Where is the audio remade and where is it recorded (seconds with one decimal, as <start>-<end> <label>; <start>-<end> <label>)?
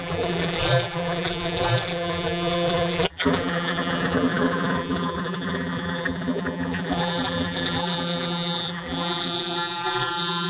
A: 0.0-10.5 remade